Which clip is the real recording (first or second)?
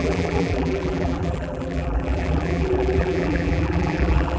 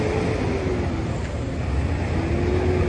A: second